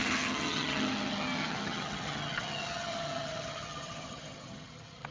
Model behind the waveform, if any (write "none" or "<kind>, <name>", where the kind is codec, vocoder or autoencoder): vocoder, HiFi-GAN